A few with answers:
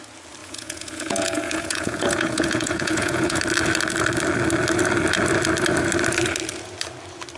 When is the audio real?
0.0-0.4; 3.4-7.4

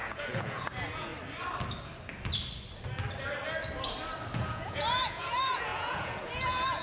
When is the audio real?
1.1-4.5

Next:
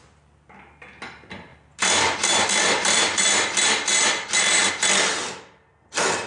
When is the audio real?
0.0-6.3

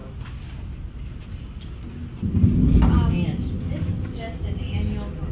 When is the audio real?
0.0-5.3

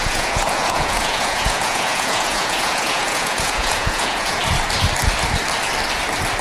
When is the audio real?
4.4-6.4

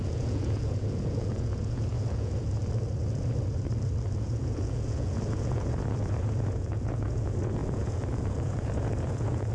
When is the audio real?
2.6-4.2